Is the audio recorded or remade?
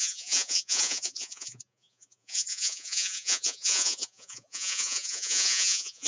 remade